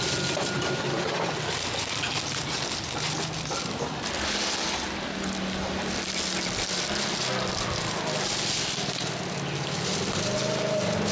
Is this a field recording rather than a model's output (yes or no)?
yes